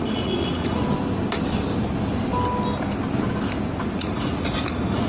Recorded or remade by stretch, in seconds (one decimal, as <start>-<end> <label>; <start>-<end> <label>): 0.0-0.8 remade; 0.8-3.9 recorded; 3.9-5.1 remade